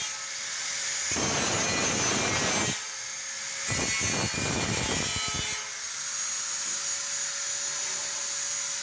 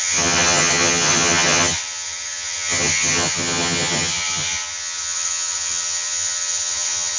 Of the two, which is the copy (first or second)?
second